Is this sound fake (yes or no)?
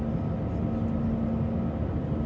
no